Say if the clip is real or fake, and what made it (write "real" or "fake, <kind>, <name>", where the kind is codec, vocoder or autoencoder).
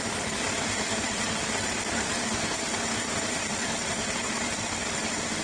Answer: fake, vocoder, BigVGAN v2